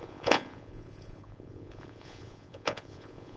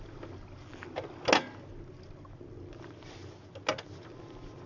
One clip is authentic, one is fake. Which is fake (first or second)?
first